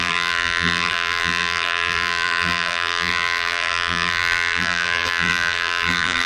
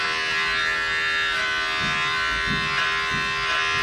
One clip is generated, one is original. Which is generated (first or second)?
first